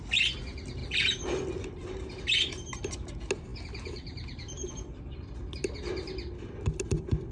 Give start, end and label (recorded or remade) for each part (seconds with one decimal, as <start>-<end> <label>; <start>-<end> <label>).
0.0-7.3 recorded